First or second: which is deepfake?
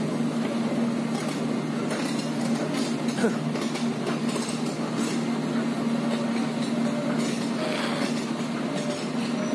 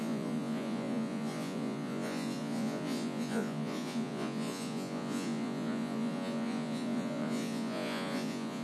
second